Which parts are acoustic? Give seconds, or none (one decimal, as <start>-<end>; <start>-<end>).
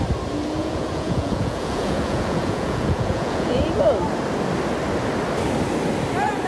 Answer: 0.0-0.6; 3.7-6.5